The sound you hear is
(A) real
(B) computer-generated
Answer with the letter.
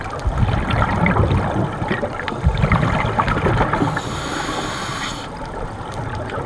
A